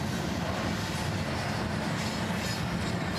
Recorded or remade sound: recorded